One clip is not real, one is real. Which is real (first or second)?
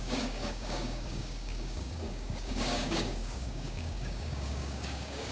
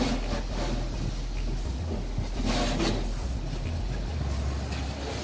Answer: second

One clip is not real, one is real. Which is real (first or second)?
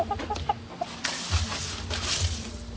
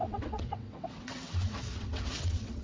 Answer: first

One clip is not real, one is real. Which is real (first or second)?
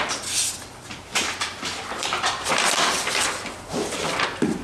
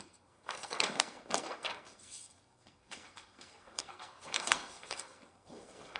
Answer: first